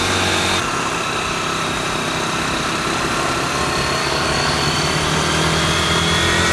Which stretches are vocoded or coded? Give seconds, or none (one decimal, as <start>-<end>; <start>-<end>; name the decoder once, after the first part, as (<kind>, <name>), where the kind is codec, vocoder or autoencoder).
4.0-4.6 (codec, DAC)